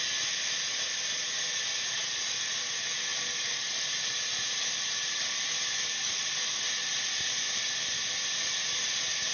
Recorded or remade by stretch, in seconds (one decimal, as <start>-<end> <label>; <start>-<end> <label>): 0.0-9.3 recorded

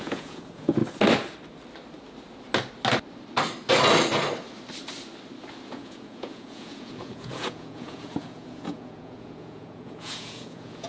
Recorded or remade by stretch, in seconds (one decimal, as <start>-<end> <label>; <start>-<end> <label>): 0.0-0.8 remade; 0.8-5.7 recorded; 5.7-10.9 remade